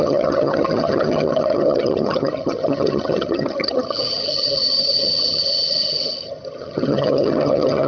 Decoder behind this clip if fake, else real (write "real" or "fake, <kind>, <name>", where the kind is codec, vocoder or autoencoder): fake, vocoder, HiFi-GAN